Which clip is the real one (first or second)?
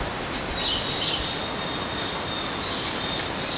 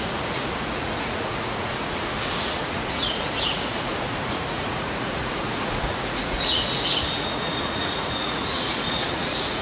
first